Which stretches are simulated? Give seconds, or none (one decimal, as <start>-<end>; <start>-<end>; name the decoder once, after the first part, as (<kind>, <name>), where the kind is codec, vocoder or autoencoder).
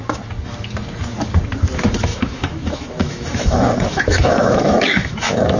2.1-5.6 (autoencoder, DAC-VAE)